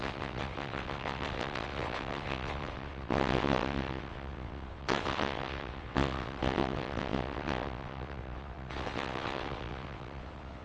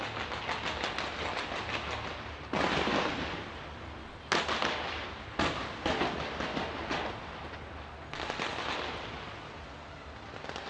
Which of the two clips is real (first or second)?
second